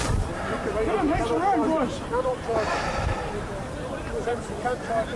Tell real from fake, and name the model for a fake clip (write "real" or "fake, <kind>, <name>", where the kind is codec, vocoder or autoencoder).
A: fake, vocoder, BigVGAN v2